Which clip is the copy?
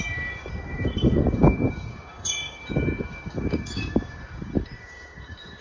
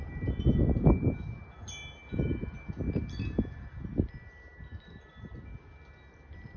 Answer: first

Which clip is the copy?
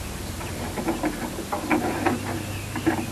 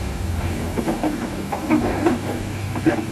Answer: second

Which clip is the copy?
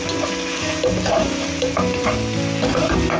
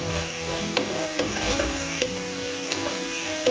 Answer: second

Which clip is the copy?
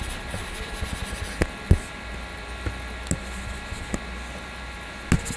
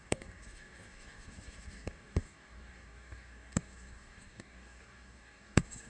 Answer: second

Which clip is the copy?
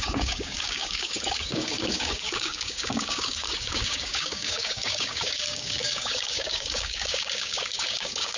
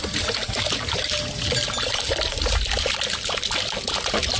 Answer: first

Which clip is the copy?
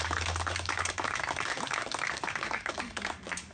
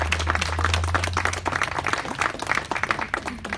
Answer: first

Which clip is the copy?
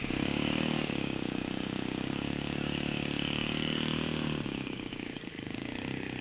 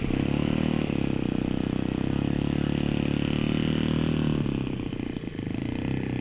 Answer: first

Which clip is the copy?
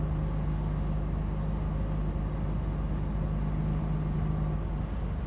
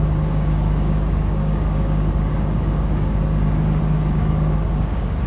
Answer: second